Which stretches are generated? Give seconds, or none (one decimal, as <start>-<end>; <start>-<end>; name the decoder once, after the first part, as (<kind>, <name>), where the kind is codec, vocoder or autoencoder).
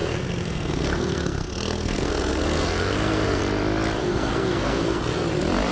0.0-3.4 (codec, SNAC); 4.0-5.0